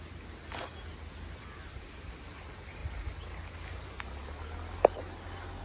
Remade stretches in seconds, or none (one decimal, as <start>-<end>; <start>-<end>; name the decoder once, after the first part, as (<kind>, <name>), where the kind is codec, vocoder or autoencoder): none